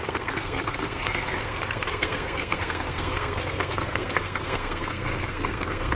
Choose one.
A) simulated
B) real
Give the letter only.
A